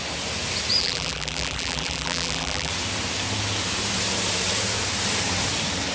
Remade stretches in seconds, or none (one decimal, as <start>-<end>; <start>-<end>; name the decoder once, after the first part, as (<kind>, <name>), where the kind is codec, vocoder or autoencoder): 0.8-2.7 (vocoder, BigVGAN v2)